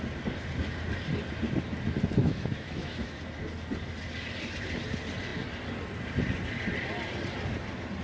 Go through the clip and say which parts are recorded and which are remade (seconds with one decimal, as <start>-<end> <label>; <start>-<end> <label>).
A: 0.0-2.2 recorded; 2.2-3.2 remade; 3.2-8.0 recorded